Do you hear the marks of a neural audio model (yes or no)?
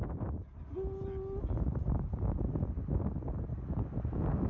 no